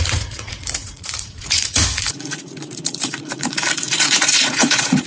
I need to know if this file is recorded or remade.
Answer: remade